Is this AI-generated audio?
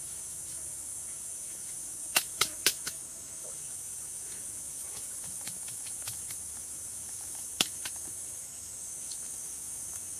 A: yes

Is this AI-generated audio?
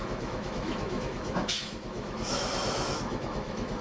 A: yes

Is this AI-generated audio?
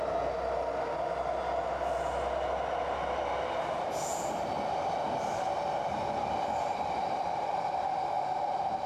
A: no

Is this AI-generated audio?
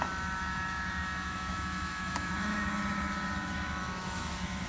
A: yes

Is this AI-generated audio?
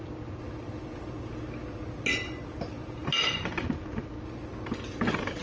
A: no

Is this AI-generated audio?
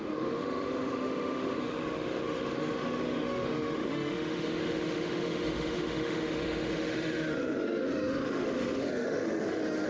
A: yes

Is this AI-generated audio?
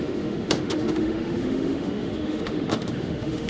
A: yes